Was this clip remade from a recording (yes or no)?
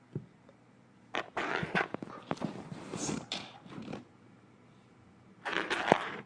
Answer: yes